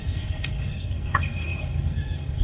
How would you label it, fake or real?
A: fake